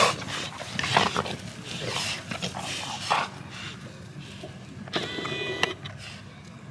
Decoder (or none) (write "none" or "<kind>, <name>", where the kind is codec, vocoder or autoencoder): none